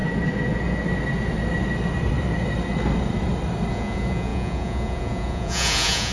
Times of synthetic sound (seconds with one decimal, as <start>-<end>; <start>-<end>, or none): 3.7-6.1